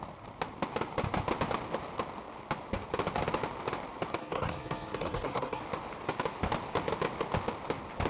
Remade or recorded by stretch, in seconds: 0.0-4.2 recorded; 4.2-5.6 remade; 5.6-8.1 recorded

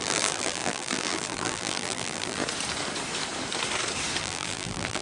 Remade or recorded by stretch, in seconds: 0.0-2.4 remade; 2.4-4.2 recorded; 4.2-5.0 remade

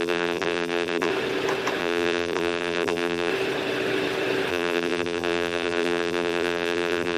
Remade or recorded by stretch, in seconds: 0.0-1.1 remade; 1.1-1.8 recorded; 1.8-3.3 remade; 3.3-4.5 recorded; 4.5-7.2 remade

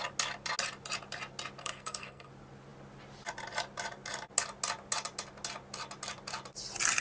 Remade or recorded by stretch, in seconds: 0.0-1.6 recorded; 1.6-2.3 remade; 2.3-7.0 recorded

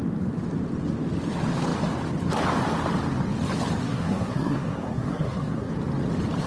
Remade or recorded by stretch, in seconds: 0.0-3.8 recorded; 3.8-5.7 remade; 5.7-6.5 recorded

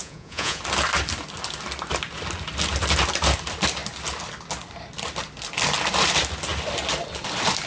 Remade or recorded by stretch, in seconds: 0.0-0.6 remade; 0.6-7.7 recorded

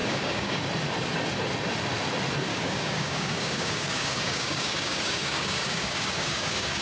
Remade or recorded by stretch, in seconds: 0.0-0.6 remade; 0.6-2.5 recorded; 2.5-6.8 remade

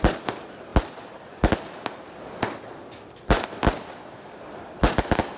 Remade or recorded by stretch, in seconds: 0.0-5.4 recorded